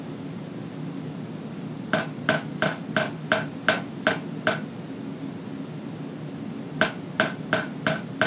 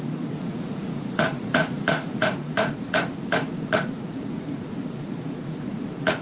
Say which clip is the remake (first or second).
second